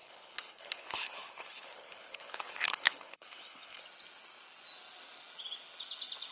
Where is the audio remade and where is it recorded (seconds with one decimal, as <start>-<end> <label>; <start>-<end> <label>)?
0.0-3.8 remade; 3.8-6.3 recorded